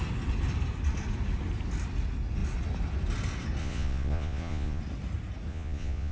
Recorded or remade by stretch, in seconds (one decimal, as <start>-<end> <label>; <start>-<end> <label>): 0.0-3.6 recorded; 3.6-4.8 remade; 4.8-5.5 recorded; 5.5-6.1 remade

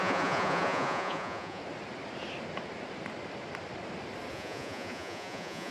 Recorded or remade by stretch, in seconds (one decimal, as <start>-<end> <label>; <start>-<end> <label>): 0.0-1.6 remade; 1.6-4.3 recorded; 4.3-5.7 remade

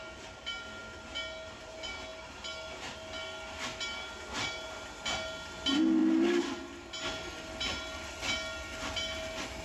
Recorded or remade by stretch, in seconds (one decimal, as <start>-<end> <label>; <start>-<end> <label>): 0.0-9.6 recorded

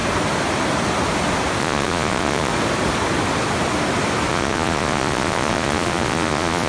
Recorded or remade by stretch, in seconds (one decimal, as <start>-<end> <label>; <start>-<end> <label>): 0.0-1.6 recorded; 1.6-2.5 remade; 2.5-4.3 recorded; 4.3-6.7 remade

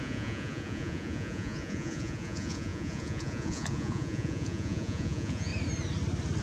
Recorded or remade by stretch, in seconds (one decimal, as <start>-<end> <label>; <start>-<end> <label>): 0.0-5.5 remade; 5.5-6.4 recorded

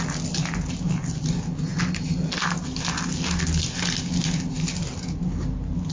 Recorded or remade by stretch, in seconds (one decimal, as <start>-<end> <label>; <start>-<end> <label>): 0.0-5.9 recorded